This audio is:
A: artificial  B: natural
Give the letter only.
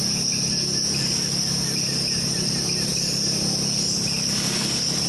B